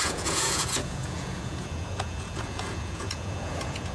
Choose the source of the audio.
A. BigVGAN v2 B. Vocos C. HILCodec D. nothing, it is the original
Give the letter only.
B